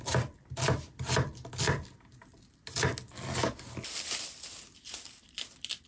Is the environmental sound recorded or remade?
recorded